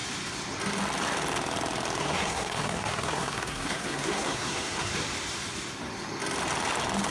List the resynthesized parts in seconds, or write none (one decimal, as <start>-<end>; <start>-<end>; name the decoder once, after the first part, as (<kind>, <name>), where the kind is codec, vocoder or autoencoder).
2.0-4.9 (codec, SNAC)